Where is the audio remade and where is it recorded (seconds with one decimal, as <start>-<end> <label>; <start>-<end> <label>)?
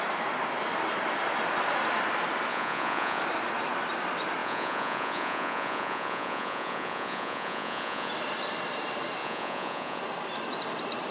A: 0.0-2.5 recorded; 2.5-3.2 remade; 3.2-4.4 recorded; 4.4-8.1 remade; 8.1-9.2 recorded; 9.2-10.0 remade; 10.0-11.1 recorded